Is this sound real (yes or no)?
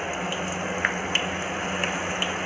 yes